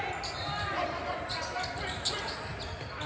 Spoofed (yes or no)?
no